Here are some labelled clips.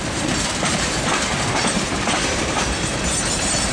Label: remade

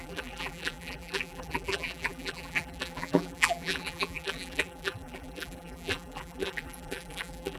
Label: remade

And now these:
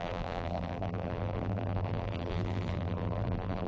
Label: remade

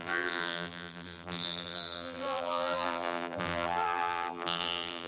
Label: remade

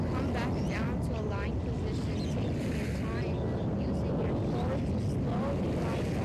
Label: recorded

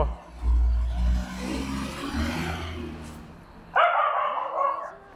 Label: recorded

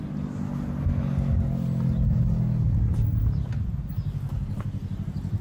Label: recorded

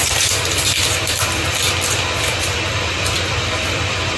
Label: remade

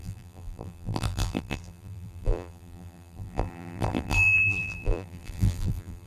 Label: remade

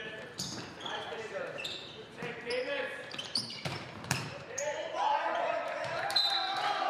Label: remade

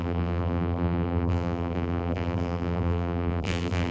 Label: remade